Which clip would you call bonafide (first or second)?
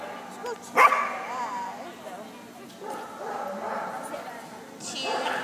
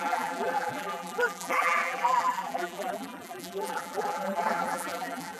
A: first